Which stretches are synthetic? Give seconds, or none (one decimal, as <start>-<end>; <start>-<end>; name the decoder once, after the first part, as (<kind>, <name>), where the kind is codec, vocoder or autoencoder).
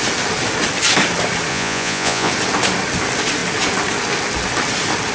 1.5-2.3 (vocoder, Vocos)